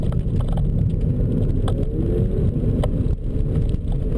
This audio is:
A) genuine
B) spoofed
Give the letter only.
A